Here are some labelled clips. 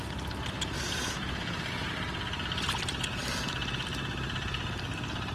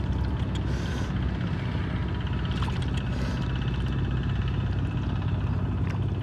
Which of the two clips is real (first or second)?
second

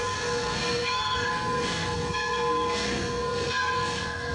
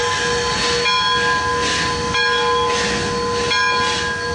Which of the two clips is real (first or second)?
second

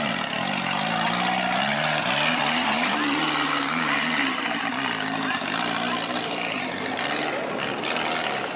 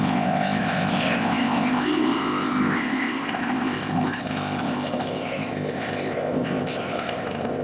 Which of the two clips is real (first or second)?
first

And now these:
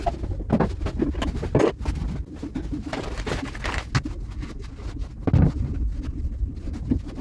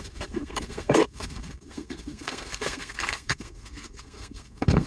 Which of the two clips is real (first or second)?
first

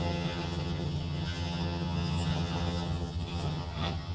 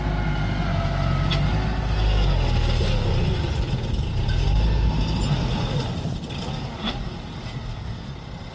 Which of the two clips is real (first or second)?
second